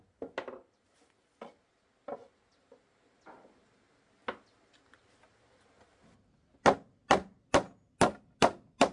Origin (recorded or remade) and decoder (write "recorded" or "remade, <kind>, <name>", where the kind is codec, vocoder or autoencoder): recorded